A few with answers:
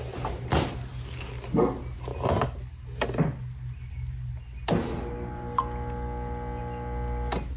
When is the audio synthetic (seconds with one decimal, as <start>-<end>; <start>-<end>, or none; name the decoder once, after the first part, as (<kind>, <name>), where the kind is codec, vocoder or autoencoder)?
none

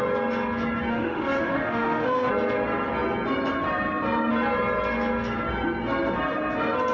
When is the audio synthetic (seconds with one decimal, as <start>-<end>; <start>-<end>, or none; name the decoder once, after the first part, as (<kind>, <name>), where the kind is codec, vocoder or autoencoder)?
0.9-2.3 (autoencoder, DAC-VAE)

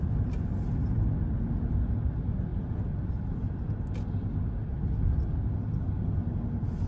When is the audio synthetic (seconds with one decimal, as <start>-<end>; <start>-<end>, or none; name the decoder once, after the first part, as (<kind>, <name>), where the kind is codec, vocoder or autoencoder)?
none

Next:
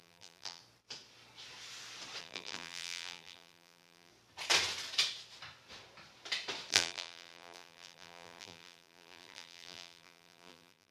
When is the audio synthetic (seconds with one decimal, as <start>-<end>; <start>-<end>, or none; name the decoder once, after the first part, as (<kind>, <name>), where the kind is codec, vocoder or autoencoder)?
0.0-0.6 (vocoder, BigVGAN v2); 2.2-4.1; 6.7-10.9

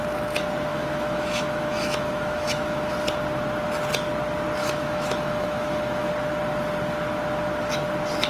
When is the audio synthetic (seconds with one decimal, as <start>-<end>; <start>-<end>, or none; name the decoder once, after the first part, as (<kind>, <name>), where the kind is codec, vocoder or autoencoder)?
0.7-2.9 (autoencoder, DAC-VAE); 4.6-6.1

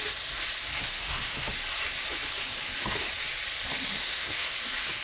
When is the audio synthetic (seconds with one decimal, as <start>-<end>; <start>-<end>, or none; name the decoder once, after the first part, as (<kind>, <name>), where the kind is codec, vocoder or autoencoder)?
0.8-1.5 (autoencoder, DAC-VAE); 4.0-4.5

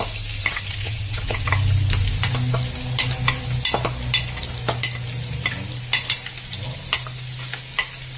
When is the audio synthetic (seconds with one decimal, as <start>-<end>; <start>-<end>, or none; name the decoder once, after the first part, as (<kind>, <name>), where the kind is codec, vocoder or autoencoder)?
0.4-1.5 (vocoder, WaveNeXt)